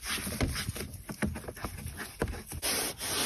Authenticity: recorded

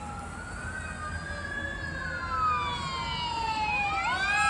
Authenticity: recorded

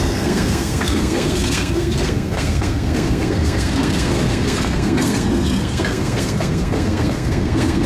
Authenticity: remade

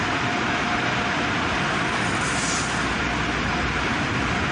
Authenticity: recorded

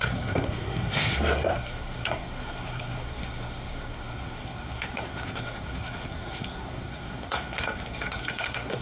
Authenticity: remade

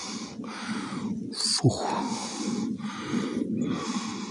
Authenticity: recorded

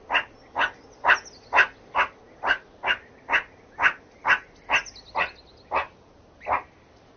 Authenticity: recorded